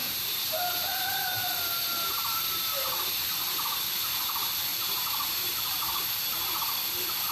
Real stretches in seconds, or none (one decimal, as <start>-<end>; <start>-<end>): 4.0-4.7; 6.0-7.3